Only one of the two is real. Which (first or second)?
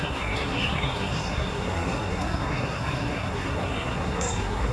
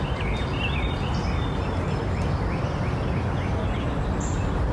second